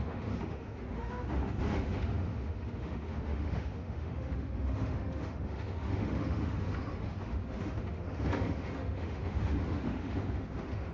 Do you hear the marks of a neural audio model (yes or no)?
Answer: yes